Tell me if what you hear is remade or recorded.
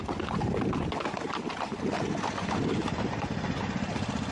recorded